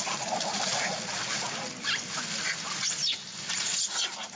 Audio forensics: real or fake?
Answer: real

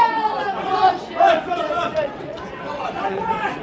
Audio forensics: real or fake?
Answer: fake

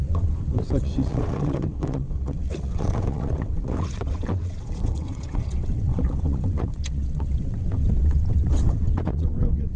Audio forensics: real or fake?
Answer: fake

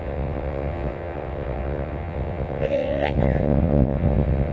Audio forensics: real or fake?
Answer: fake